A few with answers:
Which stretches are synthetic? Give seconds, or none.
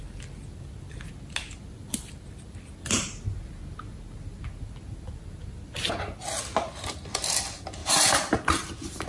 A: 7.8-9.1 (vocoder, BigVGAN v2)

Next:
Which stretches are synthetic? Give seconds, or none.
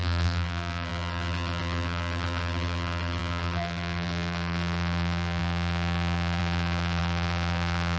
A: 0.0-8.0 (vocoder, BigVGAN v2)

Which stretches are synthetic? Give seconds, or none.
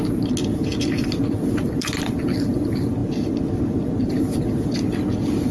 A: 0.7-2.2 (vocoder, BigVGAN v2); 3.0-5.1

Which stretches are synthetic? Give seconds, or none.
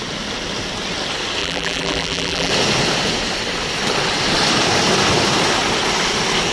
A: 1.4-2.5 (vocoder, BigVGAN v2)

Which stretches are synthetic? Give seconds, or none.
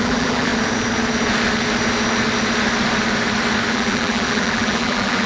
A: 0.0-0.5 (vocoder, BigVGAN v2); 3.7-5.3